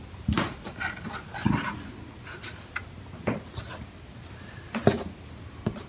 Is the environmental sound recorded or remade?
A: recorded